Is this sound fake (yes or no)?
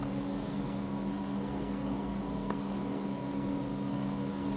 yes